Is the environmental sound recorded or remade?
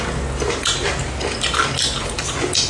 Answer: recorded